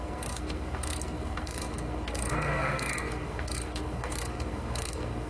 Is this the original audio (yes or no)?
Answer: no